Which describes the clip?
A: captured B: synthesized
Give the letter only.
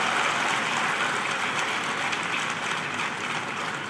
A